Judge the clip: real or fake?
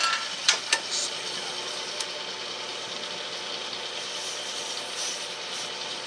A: real